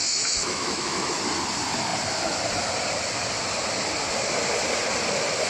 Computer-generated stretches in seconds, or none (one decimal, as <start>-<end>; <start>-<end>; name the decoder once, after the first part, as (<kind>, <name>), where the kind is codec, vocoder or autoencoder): 0.0-1.2 (autoencoder, DAC-VAE)